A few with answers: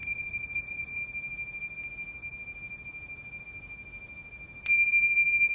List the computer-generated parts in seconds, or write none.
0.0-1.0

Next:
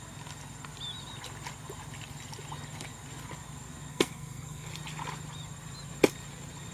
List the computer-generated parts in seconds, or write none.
3.9-4.7

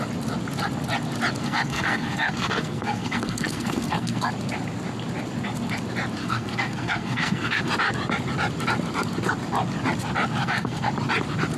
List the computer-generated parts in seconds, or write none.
1.4-4.3; 6.2-7.7; 10.4-10.9

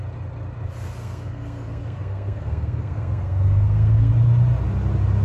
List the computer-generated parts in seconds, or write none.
1.0-4.1